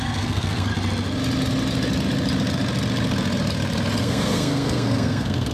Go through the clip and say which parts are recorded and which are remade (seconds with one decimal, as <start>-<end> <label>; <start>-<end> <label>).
0.0-0.7 remade; 0.7-4.0 recorded; 4.0-5.5 remade